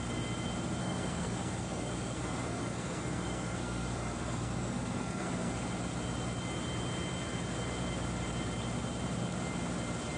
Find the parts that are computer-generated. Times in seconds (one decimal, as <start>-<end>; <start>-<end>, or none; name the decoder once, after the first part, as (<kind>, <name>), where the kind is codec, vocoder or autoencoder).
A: 0.8-5.5 (codec, SNAC)